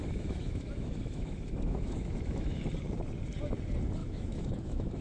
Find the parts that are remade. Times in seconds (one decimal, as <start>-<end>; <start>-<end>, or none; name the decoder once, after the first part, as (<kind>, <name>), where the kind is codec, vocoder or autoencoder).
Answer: 0.0-2.6 (autoencoder, DAC-VAE); 4.0-5.0